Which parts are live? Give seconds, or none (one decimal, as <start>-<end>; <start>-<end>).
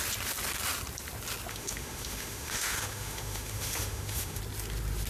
0.0-1.5; 4.4-5.1